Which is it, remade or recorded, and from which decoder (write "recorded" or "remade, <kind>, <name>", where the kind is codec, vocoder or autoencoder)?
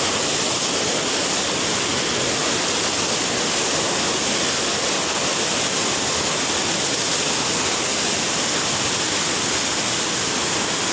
recorded